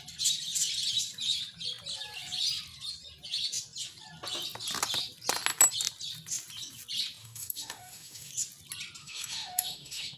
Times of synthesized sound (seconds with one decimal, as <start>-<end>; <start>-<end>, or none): 7.2-8.3; 9.0-10.2